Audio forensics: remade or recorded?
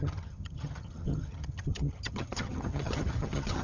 remade